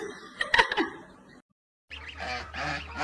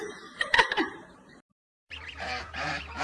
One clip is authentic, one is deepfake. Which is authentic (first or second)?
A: first